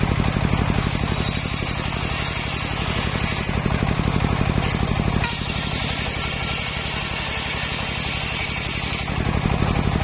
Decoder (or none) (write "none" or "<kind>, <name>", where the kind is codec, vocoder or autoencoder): none